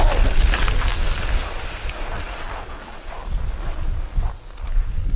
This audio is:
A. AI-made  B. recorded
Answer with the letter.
B